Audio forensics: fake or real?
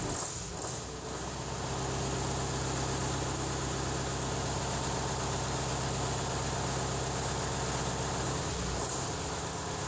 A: real